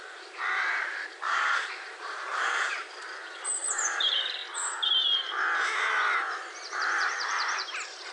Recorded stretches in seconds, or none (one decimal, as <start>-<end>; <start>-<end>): 4.4-6.7